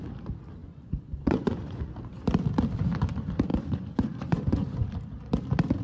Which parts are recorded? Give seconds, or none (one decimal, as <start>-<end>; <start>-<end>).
0.0-0.6; 1.9-3.5; 4.9-5.8